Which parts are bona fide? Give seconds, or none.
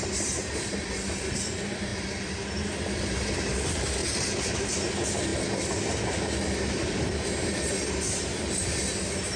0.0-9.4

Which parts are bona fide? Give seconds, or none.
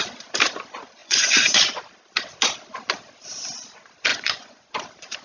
0.0-1.0; 1.8-4.1; 4.7-5.2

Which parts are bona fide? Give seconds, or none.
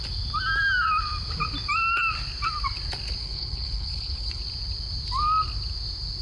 0.0-3.2; 4.4-6.2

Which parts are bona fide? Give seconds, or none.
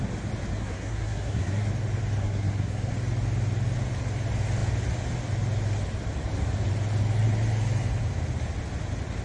0.0-0.6; 1.7-2.2; 2.9-9.2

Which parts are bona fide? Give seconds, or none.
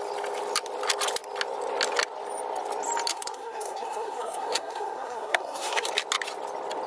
0.0-3.1; 5.9-6.9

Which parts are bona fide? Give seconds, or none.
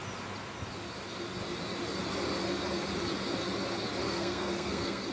0.0-4.0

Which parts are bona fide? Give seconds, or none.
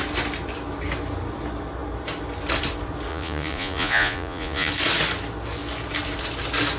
0.0-3.1; 4.7-6.8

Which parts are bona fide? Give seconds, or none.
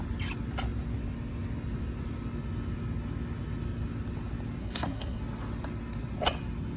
0.0-4.6; 5.2-6.8